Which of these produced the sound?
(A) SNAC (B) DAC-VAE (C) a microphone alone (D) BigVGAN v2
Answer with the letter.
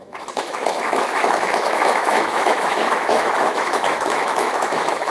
B